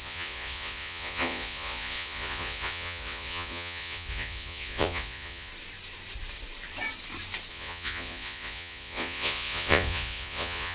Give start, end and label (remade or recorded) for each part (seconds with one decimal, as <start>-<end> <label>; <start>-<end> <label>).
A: 0.0-5.5 remade; 5.5-7.5 recorded; 7.5-10.7 remade